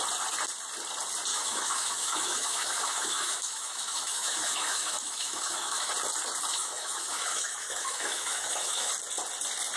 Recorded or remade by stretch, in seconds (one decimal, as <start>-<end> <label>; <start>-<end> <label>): 0.0-1.3 recorded; 1.3-5.9 remade; 5.9-6.5 recorded; 6.5-8.9 remade; 8.9-9.8 recorded